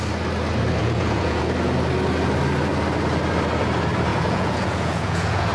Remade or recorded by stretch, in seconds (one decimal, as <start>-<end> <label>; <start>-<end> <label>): 0.0-0.8 recorded; 0.8-1.4 remade; 1.4-4.1 recorded; 4.1-5.5 remade